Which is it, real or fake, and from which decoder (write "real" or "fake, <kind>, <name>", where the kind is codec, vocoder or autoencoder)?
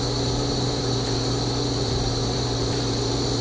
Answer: fake, vocoder, BigVGAN v2